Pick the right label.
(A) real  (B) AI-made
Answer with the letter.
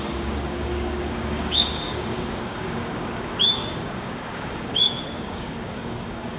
B